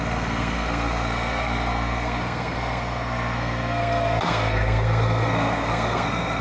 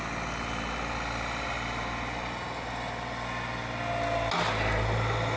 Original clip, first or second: second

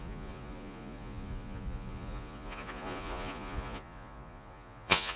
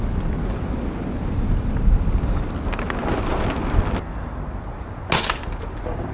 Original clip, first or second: second